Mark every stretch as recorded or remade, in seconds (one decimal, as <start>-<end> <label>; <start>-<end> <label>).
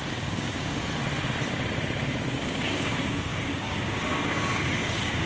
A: 0.0-0.8 remade; 0.8-2.4 recorded; 2.4-5.3 remade